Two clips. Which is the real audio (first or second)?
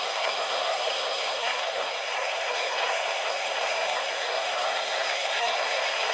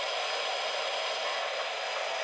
second